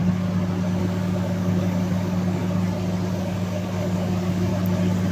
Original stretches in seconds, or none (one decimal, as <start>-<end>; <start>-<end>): 0.0-0.8; 2.4-3.2; 4.5-5.1